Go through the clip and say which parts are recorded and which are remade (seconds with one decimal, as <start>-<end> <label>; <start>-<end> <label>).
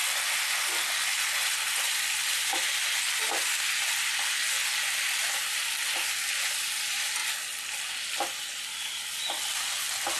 0.0-10.2 recorded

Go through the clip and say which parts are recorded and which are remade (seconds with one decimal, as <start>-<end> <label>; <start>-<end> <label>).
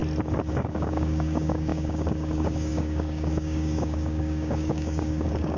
0.0-0.5 recorded; 0.5-5.6 remade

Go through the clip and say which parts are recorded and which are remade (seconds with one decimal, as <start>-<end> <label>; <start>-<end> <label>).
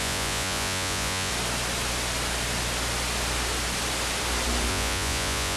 0.0-1.3 remade; 1.3-4.7 recorded; 4.7-5.6 remade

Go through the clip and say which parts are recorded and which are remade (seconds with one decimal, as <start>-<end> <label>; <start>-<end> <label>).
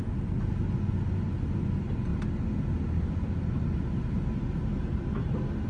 0.0-5.7 recorded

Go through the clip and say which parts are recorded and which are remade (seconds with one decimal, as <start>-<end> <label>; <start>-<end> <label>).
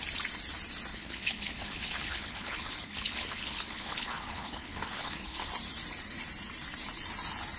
0.0-0.9 recorded; 0.9-5.5 remade; 5.5-7.6 recorded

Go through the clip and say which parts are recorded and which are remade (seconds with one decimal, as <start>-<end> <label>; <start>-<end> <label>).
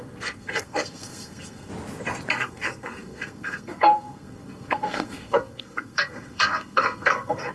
0.0-1.7 remade; 1.7-2.3 recorded; 2.3-7.5 remade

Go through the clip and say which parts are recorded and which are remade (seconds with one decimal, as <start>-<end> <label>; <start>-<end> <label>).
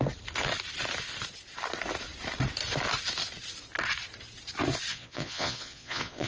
0.0-4.9 recorded; 4.9-6.3 remade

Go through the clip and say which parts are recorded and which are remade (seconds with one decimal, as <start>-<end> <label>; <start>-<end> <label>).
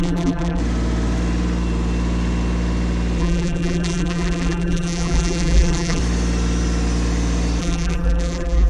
0.0-0.6 remade; 0.6-3.2 recorded; 3.2-6.0 remade; 6.0-7.6 recorded; 7.6-8.7 remade